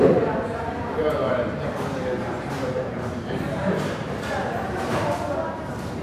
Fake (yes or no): yes